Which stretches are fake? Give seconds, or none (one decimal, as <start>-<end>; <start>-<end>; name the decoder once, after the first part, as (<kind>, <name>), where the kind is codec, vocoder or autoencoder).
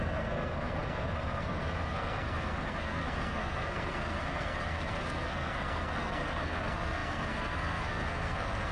0.0-8.7 (codec, SNAC)